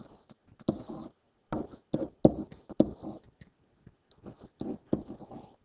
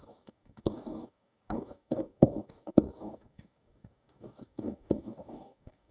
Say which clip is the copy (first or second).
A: second